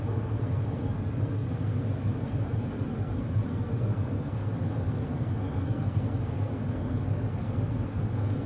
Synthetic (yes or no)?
yes